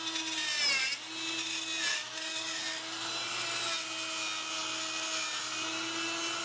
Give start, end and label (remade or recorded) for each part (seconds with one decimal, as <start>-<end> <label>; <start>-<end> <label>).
0.0-1.9 recorded; 1.9-2.6 remade; 2.6-6.4 recorded